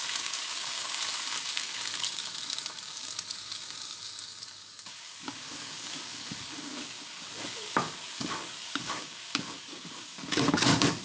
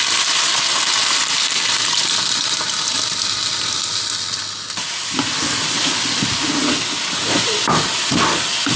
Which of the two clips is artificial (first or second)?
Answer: first